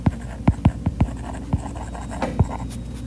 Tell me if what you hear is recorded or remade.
recorded